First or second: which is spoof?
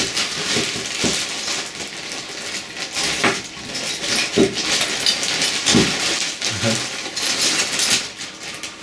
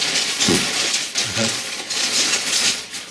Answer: second